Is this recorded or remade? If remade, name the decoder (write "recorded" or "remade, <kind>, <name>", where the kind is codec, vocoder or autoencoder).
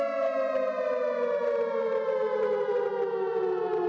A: recorded